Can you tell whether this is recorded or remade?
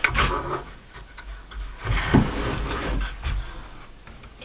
remade